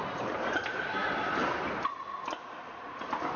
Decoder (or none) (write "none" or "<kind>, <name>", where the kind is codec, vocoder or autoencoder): none